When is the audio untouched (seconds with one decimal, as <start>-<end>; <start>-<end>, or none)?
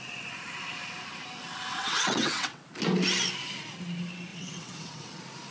0.0-1.7; 2.6-4.3; 5.1-5.5